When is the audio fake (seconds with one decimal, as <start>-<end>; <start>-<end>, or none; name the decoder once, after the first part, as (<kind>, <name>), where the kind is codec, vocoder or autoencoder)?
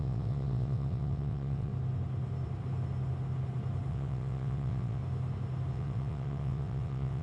0.0-1.7 (vocoder, WaveNeXt); 3.9-5.0; 5.7-7.2